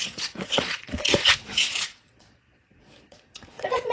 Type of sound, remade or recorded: remade